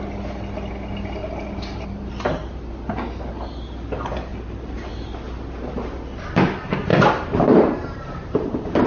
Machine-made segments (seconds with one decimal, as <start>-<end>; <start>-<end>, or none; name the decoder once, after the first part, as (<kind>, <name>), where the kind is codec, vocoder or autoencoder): 1.2-2.7 (vocoder, BigVGAN v2); 4.3-4.9; 6.9-8.9